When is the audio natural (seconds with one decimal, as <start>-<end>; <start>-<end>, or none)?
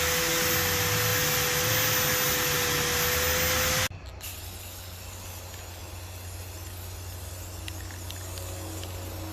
0.0-9.3